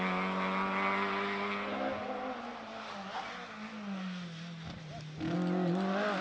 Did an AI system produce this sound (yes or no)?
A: no